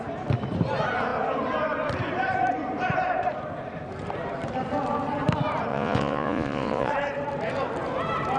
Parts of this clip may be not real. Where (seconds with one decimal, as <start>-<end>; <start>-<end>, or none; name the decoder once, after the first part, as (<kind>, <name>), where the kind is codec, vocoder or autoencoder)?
5.7-6.9 (vocoder, Vocos)